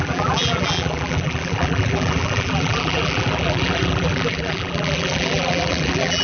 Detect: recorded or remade remade